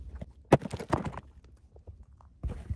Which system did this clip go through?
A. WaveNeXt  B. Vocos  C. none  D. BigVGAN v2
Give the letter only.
C